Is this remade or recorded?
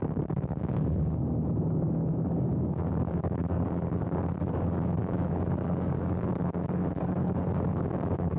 remade